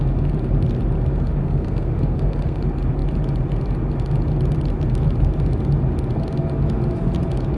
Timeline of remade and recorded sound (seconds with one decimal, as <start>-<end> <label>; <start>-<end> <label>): 0.0-1.4 recorded; 1.4-2.6 remade; 2.6-7.6 recorded